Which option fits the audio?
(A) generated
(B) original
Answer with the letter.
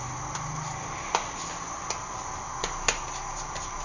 B